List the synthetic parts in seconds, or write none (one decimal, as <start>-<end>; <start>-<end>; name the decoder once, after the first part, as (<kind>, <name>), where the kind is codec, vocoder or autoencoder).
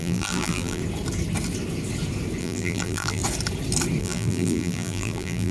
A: 0.0-0.8 (vocoder, BigVGAN v2); 2.4-3.2; 4.0-5.5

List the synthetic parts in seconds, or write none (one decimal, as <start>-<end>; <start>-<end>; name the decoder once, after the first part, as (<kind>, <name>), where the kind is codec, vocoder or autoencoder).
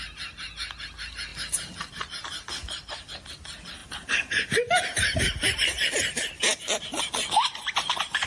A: 3.8-7.0 (vocoder, BigVGAN v2)